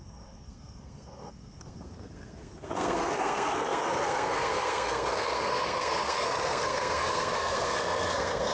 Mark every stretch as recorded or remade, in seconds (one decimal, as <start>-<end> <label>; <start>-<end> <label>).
0.0-8.5 remade